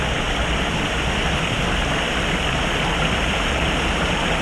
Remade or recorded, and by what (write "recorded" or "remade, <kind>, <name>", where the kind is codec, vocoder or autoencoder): recorded